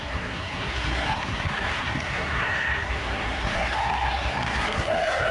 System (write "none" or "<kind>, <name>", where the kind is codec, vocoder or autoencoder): codec, SNAC